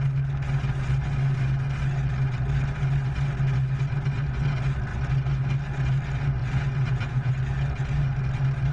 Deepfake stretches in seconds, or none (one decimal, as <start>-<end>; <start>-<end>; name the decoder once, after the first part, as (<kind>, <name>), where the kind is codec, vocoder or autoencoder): 6.4-7.3 (vocoder, Vocos)